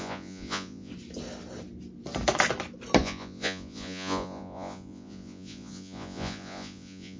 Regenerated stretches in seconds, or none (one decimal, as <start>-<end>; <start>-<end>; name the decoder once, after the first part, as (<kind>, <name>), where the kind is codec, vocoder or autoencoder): 0.0-0.9 (vocoder, Vocos); 3.0-7.2